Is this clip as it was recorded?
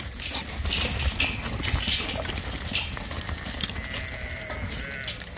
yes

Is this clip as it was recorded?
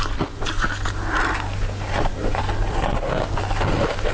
yes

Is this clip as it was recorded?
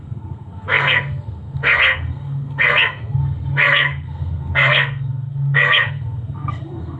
no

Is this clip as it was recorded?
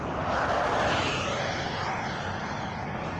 yes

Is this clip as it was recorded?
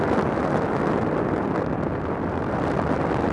yes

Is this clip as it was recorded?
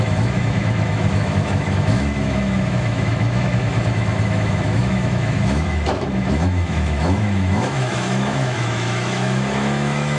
no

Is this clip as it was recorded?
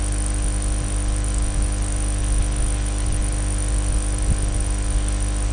yes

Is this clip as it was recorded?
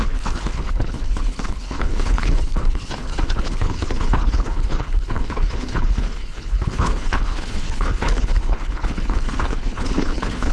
no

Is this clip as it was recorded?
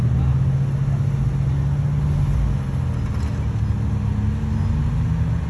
yes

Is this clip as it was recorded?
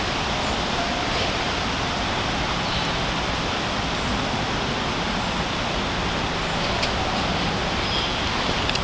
yes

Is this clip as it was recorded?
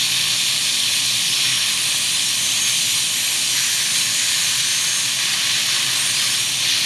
yes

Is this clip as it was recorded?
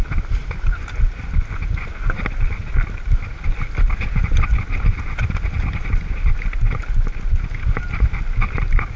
no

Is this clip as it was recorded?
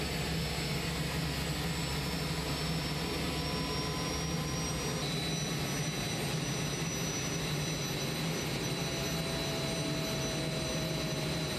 yes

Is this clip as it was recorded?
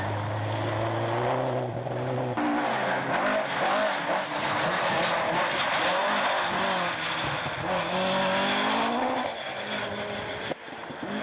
yes